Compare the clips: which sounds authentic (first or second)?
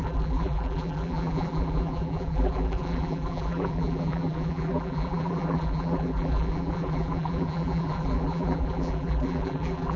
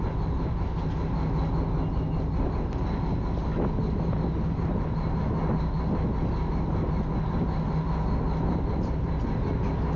second